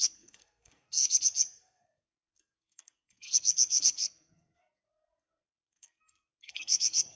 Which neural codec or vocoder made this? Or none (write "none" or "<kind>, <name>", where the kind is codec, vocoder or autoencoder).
codec, SNAC